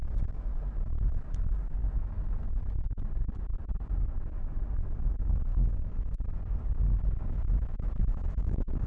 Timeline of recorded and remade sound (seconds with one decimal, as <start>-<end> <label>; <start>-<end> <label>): 0.0-5.5 recorded; 5.5-6.1 remade; 6.1-8.0 recorded; 8.0-8.9 remade